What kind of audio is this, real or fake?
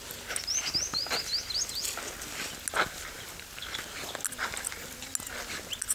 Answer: real